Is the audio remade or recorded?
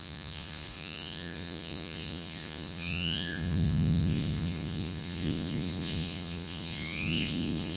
remade